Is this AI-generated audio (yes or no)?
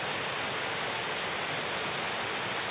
no